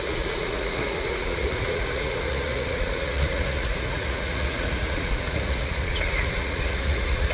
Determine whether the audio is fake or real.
fake